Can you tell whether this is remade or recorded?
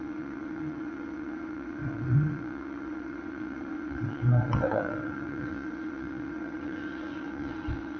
remade